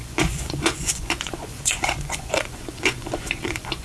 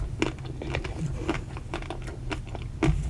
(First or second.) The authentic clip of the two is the second